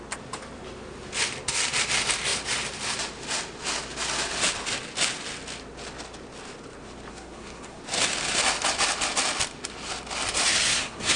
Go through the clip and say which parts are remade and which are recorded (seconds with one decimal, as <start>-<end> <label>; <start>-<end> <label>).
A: 0.0-7.1 recorded; 7.1-7.8 remade; 7.8-10.7 recorded; 10.7-11.2 remade